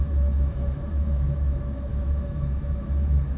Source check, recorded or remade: remade